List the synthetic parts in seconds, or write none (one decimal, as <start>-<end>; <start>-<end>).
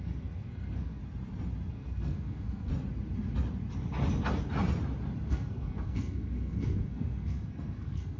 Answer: 0.0-1.0; 1.7-2.7; 5.3-8.2